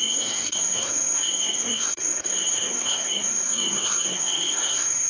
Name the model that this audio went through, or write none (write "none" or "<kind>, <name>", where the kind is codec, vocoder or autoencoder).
codec, SNAC